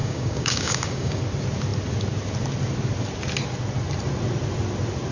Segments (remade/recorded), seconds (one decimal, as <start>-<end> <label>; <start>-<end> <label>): 0.0-1.2 remade; 1.2-5.1 recorded